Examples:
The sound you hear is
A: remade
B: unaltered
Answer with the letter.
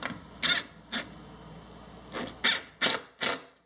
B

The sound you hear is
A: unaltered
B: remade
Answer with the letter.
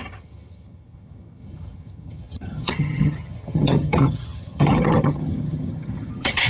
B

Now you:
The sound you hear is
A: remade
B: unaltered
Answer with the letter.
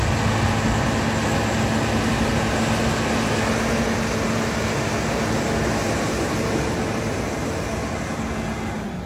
B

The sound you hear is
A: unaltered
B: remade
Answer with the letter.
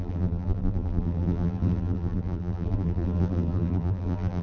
B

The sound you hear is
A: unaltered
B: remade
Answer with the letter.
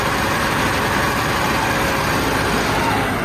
A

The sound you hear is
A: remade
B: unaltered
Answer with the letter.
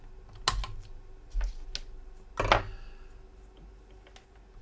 B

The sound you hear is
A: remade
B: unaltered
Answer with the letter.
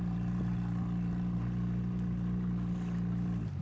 B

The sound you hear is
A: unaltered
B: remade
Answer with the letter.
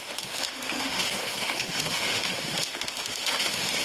B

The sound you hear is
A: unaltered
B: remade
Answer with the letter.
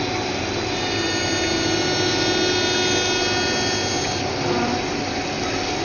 A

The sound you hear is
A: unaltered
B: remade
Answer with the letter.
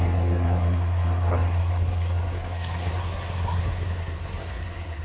B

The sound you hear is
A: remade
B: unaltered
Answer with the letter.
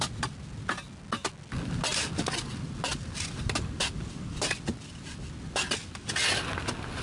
B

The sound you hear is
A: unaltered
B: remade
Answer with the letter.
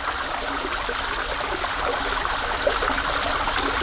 A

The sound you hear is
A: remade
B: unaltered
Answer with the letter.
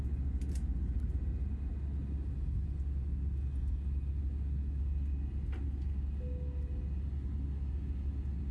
B